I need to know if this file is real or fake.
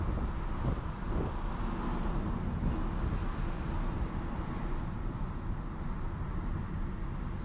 real